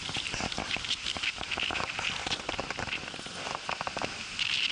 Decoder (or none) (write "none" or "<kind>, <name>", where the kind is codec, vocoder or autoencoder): none